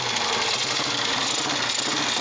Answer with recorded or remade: recorded